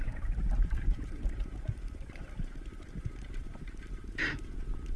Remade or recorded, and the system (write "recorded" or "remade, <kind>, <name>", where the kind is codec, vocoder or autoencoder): remade, vocoder, BigVGAN v2